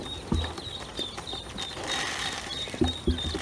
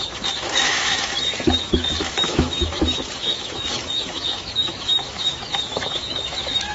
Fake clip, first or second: second